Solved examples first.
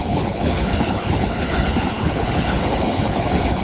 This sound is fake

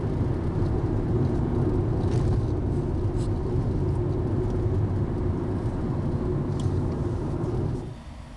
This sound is real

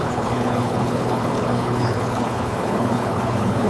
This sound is fake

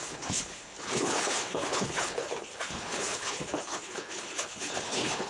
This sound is fake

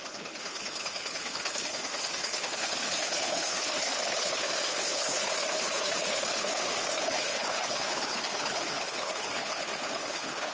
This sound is fake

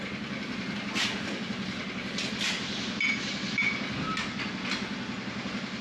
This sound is real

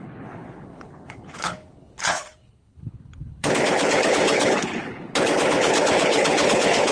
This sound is fake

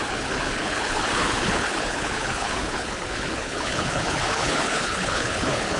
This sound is fake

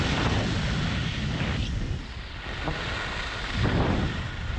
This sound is real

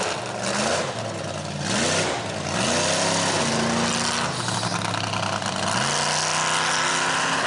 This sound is real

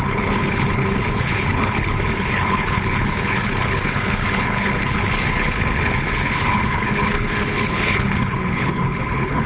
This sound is fake